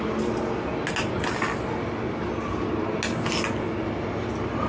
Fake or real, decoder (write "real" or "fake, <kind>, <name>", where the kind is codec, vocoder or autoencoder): real